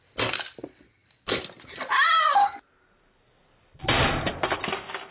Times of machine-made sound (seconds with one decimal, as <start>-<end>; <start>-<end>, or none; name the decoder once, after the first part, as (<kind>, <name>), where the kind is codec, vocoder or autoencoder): none